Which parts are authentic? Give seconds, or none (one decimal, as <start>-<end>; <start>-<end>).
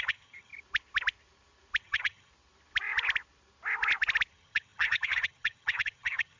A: 0.5-1.8; 2.3-4.3